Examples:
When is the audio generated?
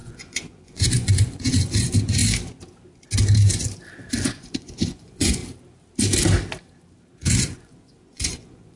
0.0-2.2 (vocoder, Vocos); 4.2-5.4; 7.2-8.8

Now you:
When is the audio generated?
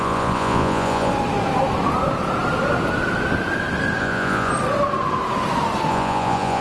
0.0-1.1 (vocoder, Vocos); 4.0-4.5; 5.9-6.6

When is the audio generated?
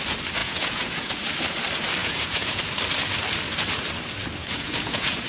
0.4-1.1 (vocoder, Vocos); 2.0-2.6; 4.4-5.3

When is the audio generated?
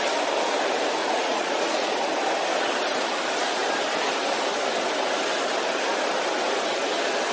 1.0-1.9 (vocoder, Vocos)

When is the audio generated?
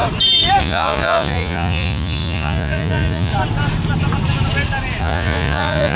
0.6-3.3 (vocoder, Vocos); 5.0-6.0